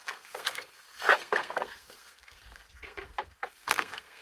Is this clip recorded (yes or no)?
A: no